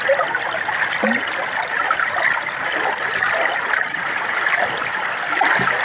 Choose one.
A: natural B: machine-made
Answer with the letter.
A